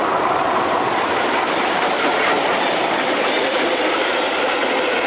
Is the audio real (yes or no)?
no